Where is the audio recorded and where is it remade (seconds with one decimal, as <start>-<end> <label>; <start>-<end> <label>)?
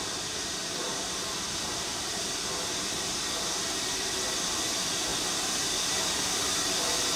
0.0-7.2 recorded